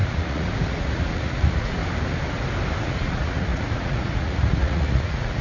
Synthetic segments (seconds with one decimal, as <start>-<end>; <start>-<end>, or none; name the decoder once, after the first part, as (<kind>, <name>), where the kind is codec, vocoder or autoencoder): 0.0-1.8 (vocoder, Vocos); 2.8-5.4